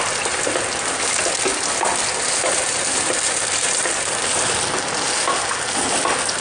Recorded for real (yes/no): yes